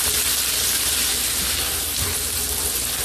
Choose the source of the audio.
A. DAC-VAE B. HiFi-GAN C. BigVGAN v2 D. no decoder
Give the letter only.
D